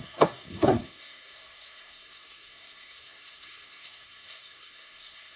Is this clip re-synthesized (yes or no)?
yes